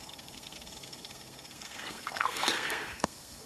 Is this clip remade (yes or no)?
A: yes